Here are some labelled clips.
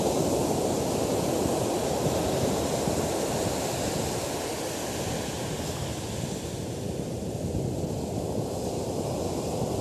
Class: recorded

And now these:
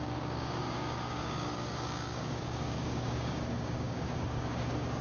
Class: remade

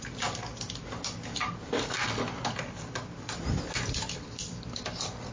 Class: recorded